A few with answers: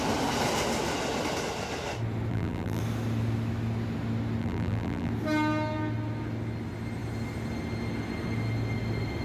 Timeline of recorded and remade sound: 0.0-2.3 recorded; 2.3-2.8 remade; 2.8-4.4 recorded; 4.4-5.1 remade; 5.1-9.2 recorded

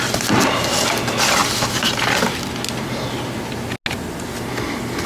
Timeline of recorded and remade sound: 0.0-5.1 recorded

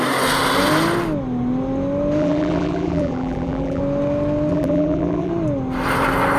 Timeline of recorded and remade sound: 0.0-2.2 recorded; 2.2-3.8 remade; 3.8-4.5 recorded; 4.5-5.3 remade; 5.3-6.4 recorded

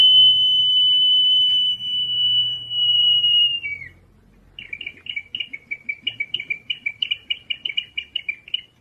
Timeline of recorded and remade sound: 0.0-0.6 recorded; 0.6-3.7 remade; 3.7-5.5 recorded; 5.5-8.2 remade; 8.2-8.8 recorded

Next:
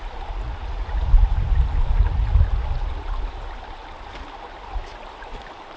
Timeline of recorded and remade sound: 0.0-0.6 remade; 0.6-2.9 recorded; 2.9-3.8 remade; 3.8-5.0 recorded; 5.0-5.8 remade

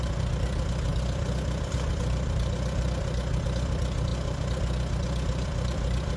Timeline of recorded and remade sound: 0.0-6.2 recorded

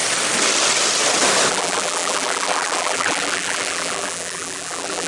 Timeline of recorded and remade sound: 0.0-1.5 recorded; 1.5-5.1 remade